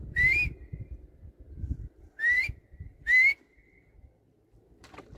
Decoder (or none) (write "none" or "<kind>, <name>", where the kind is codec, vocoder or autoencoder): vocoder, BigVGAN v2